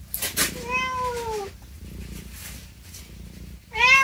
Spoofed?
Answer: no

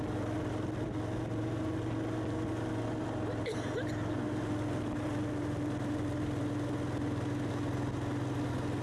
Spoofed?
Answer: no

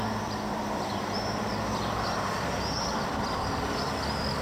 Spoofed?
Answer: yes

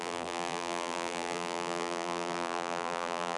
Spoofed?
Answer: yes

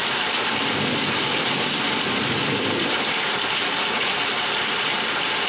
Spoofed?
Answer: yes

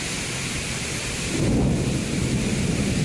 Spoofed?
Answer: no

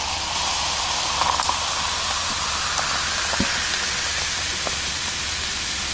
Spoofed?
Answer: no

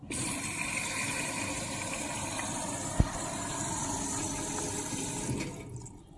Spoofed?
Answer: yes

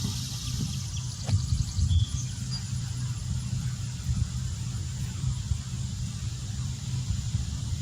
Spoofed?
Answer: yes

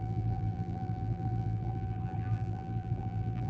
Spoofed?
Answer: yes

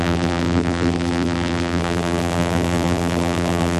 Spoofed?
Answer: yes